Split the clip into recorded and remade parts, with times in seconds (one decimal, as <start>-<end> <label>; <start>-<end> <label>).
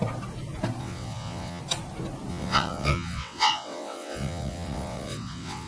0.0-0.8 recorded; 0.8-1.6 remade; 1.6-2.3 recorded; 2.3-5.7 remade